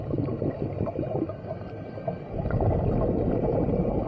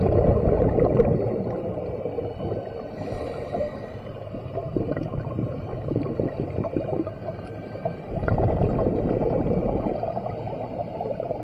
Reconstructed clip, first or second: second